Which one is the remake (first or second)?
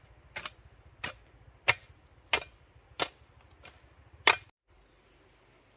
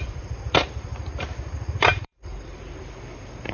second